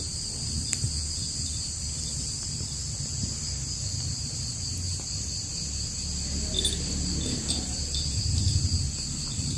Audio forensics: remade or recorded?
recorded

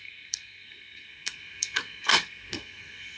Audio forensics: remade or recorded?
remade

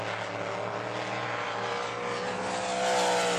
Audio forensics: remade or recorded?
recorded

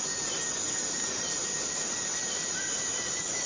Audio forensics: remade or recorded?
recorded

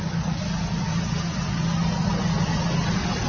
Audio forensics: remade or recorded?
recorded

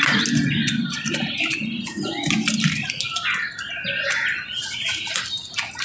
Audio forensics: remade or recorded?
recorded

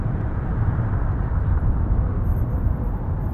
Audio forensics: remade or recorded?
remade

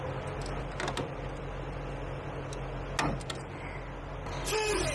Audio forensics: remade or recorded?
recorded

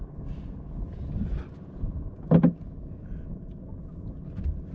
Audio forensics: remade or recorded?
recorded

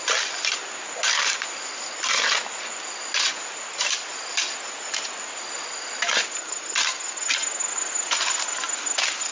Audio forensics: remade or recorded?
recorded